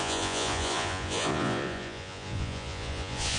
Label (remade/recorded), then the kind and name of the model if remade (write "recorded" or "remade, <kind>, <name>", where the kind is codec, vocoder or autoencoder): remade, vocoder, Vocos